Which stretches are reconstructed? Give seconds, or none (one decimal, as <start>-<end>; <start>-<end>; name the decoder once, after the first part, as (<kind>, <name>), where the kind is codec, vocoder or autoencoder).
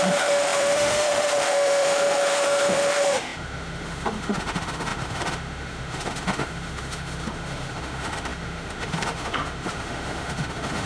0.0-10.9 (autoencoder, DAC-VAE)